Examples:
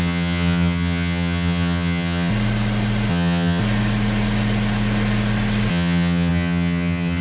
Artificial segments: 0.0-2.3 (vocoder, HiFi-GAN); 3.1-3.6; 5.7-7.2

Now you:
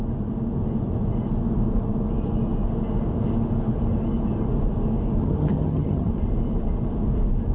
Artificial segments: 5.2-6.1 (vocoder, HiFi-GAN)

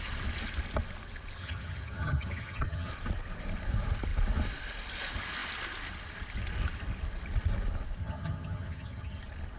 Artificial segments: 1.4-2.9 (vocoder, HiFi-GAN); 8.0-9.2

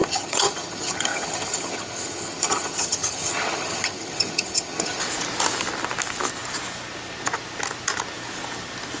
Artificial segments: 0.0-5.0 (vocoder, HiFi-GAN)

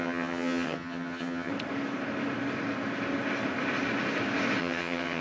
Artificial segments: 0.0-1.5 (vocoder, HiFi-GAN); 4.6-5.2

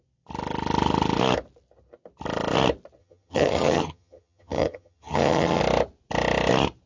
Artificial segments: 3.0-5.6 (vocoder, HiFi-GAN)

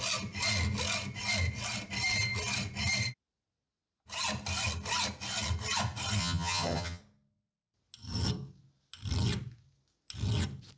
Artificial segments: 6.2-7.0 (vocoder, HiFi-GAN)